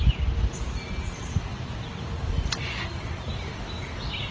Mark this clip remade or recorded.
recorded